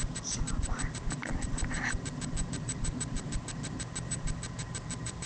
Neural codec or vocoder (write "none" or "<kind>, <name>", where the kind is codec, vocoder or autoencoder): vocoder, BigVGAN v2